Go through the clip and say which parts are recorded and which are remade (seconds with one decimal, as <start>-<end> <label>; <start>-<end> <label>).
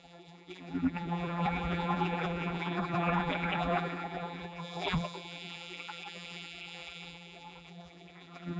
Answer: 0.0-8.6 remade